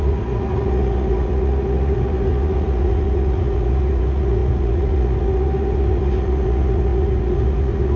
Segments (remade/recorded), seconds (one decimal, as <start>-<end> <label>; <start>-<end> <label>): 0.0-8.0 remade

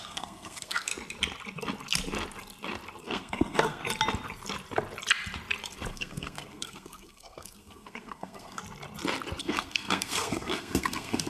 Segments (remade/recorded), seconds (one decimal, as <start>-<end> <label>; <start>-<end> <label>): 0.0-0.9 remade; 0.9-3.0 recorded; 3.0-3.8 remade; 3.8-5.9 recorded; 5.9-8.6 remade; 8.6-9.4 recorded; 9.4-11.3 remade

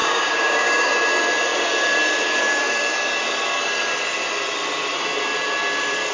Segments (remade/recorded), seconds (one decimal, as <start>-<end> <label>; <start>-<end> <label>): 0.0-0.9 remade; 0.9-6.1 recorded

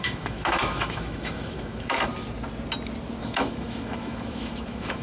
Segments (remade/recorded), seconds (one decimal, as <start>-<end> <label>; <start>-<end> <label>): 0.0-2.1 remade; 2.1-3.2 recorded; 3.2-5.0 remade

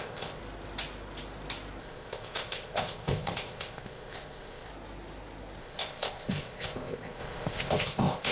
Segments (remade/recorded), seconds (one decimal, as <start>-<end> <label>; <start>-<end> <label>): 0.0-0.4 remade; 0.4-1.8 recorded; 1.8-4.7 remade; 4.7-5.6 recorded; 5.6-8.3 remade

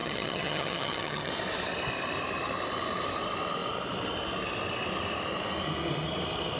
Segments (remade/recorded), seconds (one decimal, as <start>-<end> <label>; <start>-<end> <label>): 0.0-1.3 remade; 1.3-6.6 recorded

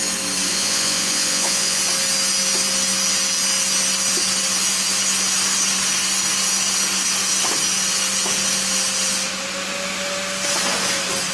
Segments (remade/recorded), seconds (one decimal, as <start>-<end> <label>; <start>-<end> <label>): 0.0-0.5 recorded; 0.5-1.8 remade; 1.8-11.3 recorded

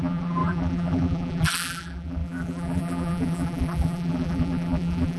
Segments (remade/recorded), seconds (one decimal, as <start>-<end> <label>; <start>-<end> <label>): 0.0-5.2 remade